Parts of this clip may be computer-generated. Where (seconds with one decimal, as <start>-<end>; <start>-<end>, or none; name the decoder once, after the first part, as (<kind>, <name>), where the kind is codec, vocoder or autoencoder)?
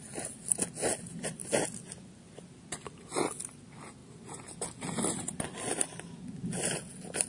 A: none